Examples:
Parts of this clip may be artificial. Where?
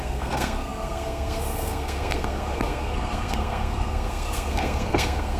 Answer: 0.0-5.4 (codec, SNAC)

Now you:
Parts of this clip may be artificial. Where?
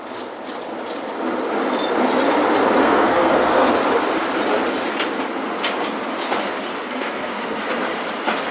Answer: 2.8-3.7 (codec, SNAC); 6.8-7.6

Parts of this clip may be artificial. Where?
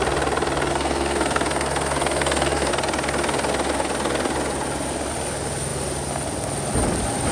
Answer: 0.7-2.7 (codec, SNAC)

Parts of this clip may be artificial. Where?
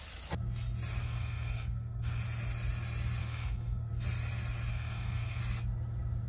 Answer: 1.0-2.2 (codec, SNAC); 3.2-3.9; 4.7-5.4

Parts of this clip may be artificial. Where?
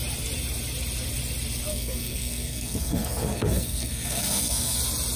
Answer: 1.7-4.8 (codec, SNAC)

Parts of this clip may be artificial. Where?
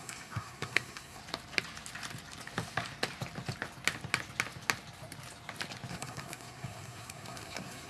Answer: 0.0-1.2 (codec, SNAC); 5.9-7.9